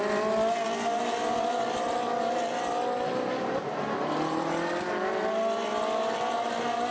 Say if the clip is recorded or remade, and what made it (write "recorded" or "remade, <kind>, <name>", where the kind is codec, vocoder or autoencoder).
recorded